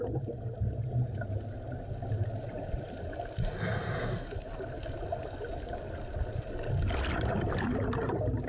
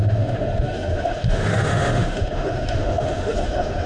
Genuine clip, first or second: first